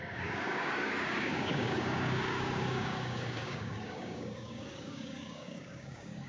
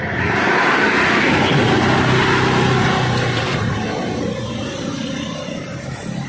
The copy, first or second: first